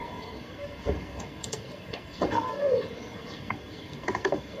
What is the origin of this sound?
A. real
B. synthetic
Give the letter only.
B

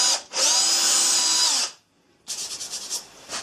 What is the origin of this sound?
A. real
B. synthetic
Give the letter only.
A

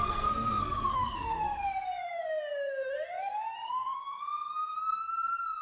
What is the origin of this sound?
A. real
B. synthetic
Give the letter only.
B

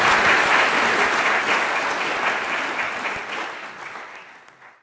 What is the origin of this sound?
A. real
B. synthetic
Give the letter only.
A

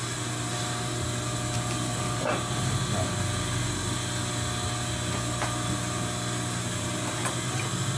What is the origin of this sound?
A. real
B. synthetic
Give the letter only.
A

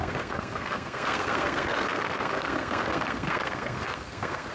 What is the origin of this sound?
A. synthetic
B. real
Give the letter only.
A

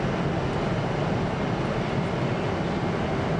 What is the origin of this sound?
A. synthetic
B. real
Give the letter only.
B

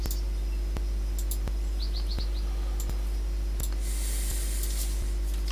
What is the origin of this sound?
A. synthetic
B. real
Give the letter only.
B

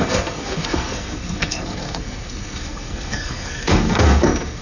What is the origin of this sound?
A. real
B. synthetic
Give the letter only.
B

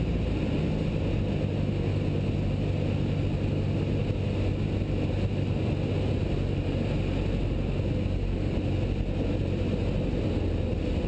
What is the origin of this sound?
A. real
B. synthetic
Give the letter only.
A